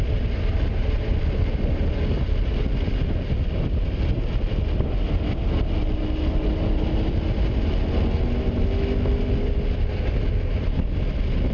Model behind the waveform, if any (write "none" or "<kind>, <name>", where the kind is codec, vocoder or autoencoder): none